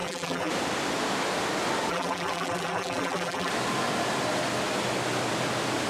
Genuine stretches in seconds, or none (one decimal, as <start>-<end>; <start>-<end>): 0.5-1.9; 3.5-5.9